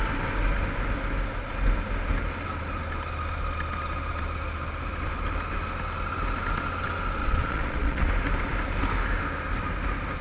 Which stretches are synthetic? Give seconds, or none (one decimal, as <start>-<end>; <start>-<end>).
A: 7.2-8.1